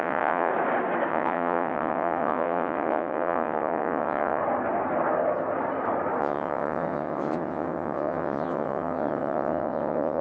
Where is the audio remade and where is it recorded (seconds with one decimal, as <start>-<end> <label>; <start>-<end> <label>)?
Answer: 0.0-0.5 remade; 0.5-1.1 recorded; 1.1-4.4 remade; 4.4-6.2 recorded; 6.2-10.2 remade